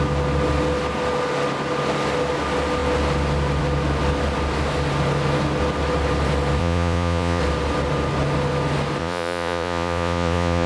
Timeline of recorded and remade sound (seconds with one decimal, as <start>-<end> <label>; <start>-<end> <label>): 0.0-6.6 recorded; 6.6-7.4 remade; 7.4-9.0 recorded; 9.0-10.7 remade